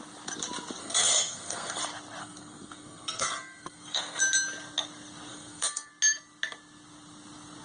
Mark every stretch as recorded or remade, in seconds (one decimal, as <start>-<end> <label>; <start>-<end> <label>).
0.0-0.8 recorded; 0.8-1.8 remade; 1.8-2.2 recorded; 2.2-4.2 remade; 4.2-5.3 recorded; 5.3-5.9 remade; 5.9-7.6 recorded

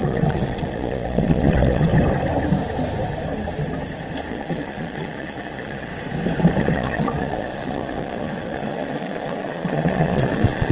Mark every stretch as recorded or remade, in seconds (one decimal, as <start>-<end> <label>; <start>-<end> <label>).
0.0-1.9 remade; 1.9-4.3 recorded; 4.3-5.9 remade; 5.9-6.6 recorded; 6.6-10.7 remade

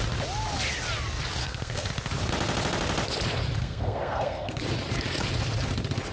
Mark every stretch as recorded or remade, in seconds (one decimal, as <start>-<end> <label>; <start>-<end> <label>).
0.0-1.4 recorded; 1.4-1.9 remade; 1.9-3.6 recorded; 3.6-4.6 remade; 4.6-6.1 recorded

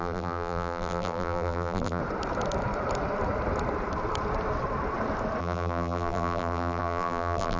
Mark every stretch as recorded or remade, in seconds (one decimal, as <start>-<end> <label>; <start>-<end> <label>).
0.0-2.0 remade; 2.0-5.4 recorded; 5.4-7.6 remade

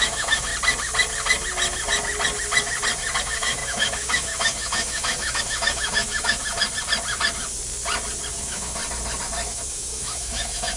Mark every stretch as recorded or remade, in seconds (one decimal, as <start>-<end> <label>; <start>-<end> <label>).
0.0-0.5 remade; 0.5-3.2 recorded; 3.2-6.4 remade; 6.4-8.3 recorded; 8.3-8.8 remade; 8.8-9.5 recorded; 9.5-10.8 remade

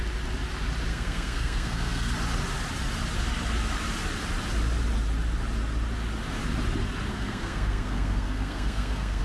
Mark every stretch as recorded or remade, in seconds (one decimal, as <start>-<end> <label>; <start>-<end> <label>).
0.0-0.9 recorded; 0.9-2.1 remade; 2.1-7.1 recorded; 7.1-9.2 remade